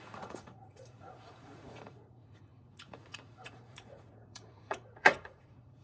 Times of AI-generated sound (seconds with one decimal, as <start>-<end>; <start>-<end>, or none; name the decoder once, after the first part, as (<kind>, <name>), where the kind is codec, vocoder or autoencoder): 0.0-5.8 (vocoder, Vocos)